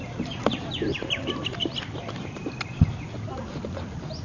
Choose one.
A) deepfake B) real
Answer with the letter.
B